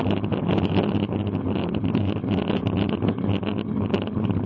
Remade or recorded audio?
recorded